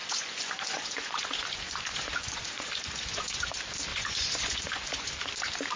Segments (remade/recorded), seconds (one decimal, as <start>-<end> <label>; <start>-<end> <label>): 0.0-3.5 remade; 3.5-3.9 recorded; 3.9-5.1 remade; 5.1-5.8 recorded